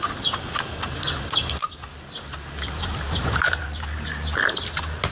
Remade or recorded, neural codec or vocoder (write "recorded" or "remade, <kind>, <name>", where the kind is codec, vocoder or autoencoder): recorded